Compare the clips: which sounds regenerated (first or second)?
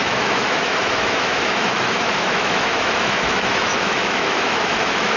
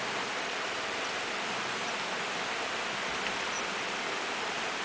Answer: first